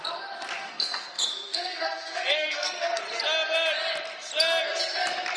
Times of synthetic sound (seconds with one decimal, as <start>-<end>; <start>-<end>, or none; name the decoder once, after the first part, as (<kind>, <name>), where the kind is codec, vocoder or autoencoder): 0.6-3.0 (codec, SNAC)